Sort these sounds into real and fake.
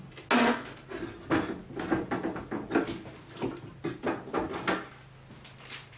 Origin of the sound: real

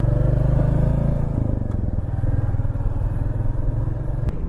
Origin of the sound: real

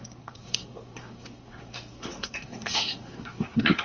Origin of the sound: fake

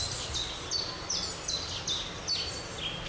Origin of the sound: real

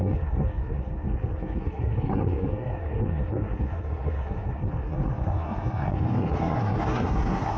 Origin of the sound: fake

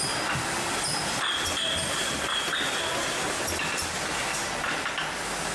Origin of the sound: real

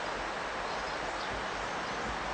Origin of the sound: real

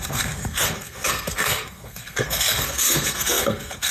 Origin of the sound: fake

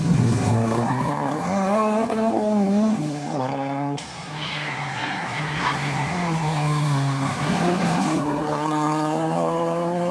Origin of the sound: fake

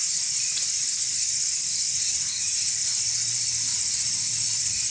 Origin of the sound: real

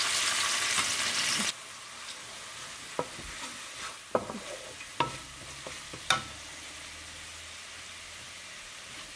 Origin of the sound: real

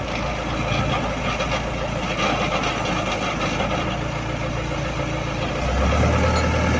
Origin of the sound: real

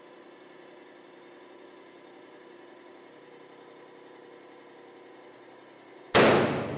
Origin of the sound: real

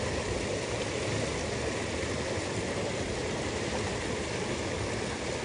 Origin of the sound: real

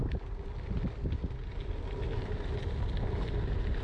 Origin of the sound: real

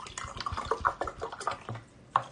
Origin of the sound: real